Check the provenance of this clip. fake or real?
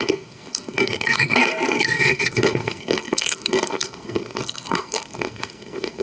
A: fake